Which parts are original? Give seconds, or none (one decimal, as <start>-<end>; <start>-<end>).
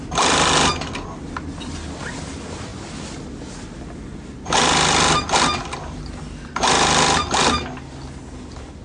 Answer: 0.0-8.8